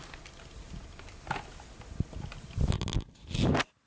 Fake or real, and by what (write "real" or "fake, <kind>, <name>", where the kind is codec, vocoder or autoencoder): real